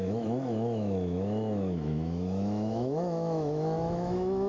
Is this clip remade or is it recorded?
remade